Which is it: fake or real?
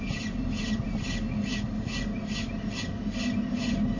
real